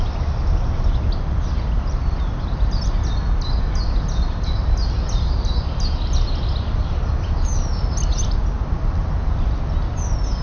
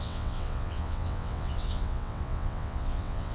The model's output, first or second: second